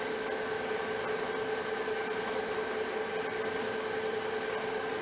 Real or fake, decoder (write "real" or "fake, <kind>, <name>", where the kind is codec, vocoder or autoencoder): real